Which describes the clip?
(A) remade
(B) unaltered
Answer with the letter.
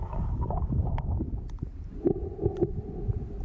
A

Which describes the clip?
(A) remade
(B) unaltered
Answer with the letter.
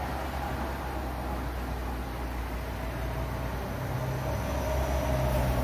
B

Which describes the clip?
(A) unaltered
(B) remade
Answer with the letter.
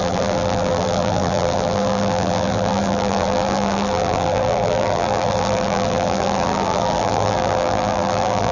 B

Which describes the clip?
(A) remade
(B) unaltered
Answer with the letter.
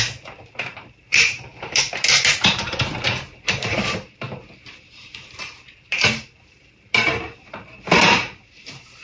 A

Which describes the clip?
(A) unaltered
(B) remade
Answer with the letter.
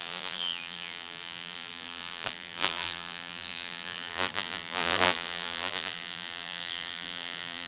B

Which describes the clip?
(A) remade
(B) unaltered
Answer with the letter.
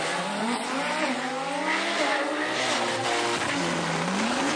B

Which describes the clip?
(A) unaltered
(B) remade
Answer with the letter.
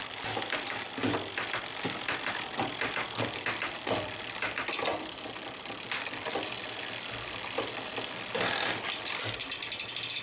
A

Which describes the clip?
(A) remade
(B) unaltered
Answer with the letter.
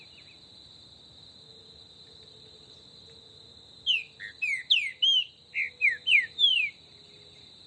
B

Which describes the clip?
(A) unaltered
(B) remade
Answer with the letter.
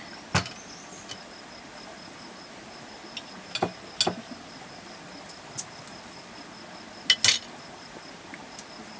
A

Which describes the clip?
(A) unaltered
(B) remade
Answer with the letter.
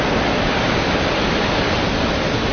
B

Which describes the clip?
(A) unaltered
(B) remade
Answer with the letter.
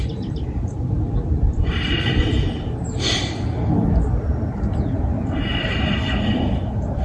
B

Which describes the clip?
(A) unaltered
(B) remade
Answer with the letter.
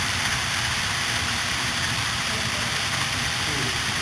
B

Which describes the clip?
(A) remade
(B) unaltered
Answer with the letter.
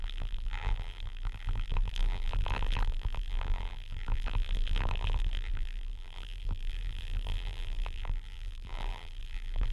A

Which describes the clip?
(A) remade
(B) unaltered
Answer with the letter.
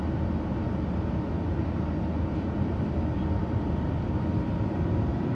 A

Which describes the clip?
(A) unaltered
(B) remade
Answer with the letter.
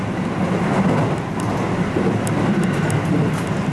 A